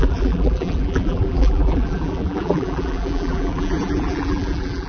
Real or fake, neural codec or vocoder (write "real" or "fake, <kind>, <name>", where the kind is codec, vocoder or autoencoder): fake, vocoder, BigVGAN v2